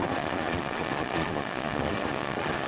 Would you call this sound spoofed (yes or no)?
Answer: yes